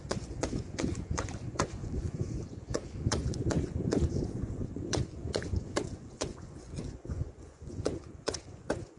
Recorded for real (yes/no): no